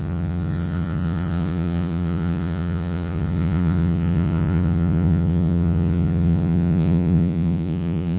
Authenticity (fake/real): fake